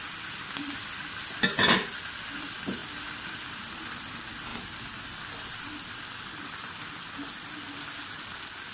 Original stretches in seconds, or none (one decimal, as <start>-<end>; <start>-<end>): 0.0-8.7